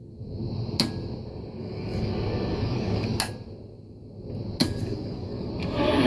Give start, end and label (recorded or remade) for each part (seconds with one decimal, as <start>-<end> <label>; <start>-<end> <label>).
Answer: 0.0-1.6 recorded; 1.6-2.1 remade; 2.1-2.5 recorded; 2.5-3.2 remade; 3.2-4.6 recorded; 4.6-5.5 remade; 5.5-6.1 recorded